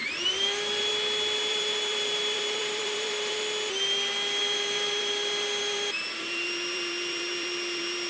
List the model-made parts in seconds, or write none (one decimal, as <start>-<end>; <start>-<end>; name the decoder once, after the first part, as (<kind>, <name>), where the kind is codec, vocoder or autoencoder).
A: 0.0-0.9 (vocoder, BigVGAN v2); 1.5-3.4; 4.4-8.1